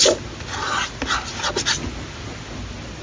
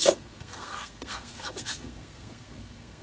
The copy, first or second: second